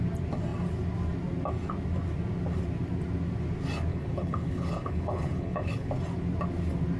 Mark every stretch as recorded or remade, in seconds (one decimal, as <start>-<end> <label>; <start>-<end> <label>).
0.0-3.9 recorded; 3.9-5.9 remade; 5.9-7.0 recorded